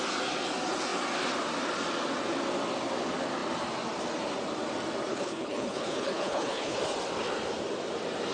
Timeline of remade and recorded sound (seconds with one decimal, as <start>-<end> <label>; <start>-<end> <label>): 0.0-5.1 recorded; 5.1-6.8 remade; 6.8-8.3 recorded